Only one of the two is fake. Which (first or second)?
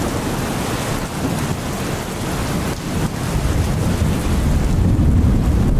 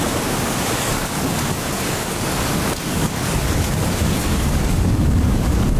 second